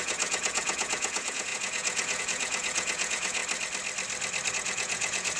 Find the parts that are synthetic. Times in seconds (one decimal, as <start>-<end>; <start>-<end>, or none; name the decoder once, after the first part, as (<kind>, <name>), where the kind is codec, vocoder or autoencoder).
0.0-3.4 (vocoder, Vocos); 4.5-5.4